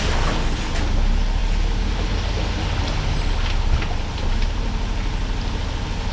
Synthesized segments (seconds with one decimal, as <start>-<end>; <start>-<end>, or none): none